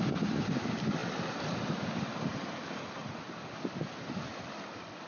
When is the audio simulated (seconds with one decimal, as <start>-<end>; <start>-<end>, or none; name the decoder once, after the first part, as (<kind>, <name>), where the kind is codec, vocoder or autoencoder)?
0.0-3.0 (vocoder, BigVGAN v2); 4.4-5.1